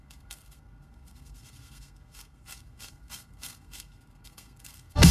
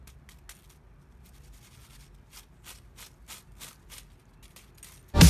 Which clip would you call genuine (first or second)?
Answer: second